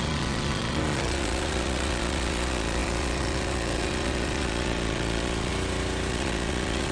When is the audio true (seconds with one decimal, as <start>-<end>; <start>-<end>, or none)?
5.5-6.1